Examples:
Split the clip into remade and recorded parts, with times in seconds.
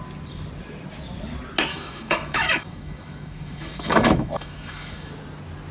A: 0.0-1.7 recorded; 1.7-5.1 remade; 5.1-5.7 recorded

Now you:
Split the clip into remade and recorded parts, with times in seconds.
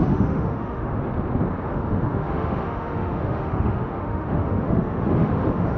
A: 0.0-1.1 remade; 1.1-1.7 recorded; 1.7-5.8 remade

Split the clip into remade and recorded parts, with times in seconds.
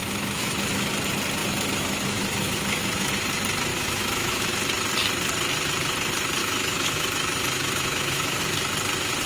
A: 0.0-0.9 remade; 0.9-1.4 recorded; 1.4-3.1 remade; 3.1-3.7 recorded; 3.7-4.5 remade; 4.5-6.4 recorded; 6.4-8.4 remade; 8.4-9.3 recorded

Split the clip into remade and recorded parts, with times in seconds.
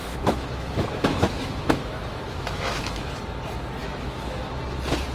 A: 0.0-3.1 remade; 3.1-3.8 recorded; 3.8-4.6 remade; 4.6-5.1 recorded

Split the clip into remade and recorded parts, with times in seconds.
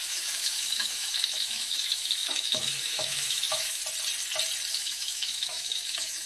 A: 0.0-3.8 remade; 3.8-4.7 recorded; 4.7-6.3 remade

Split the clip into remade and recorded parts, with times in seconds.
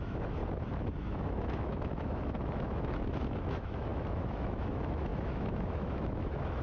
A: 0.0-0.4 remade; 0.4-1.0 recorded; 1.0-6.6 remade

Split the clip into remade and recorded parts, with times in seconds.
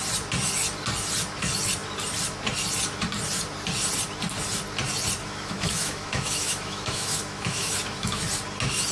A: 0.0-5.2 recorded; 5.2-8.2 remade; 8.2-8.9 recorded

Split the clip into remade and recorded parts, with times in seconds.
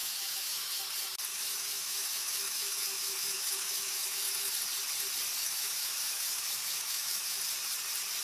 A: 0.0-0.8 remade; 0.8-1.3 recorded; 1.3-4.5 remade; 4.5-5.4 recorded; 5.4-7.4 remade; 7.4-8.2 recorded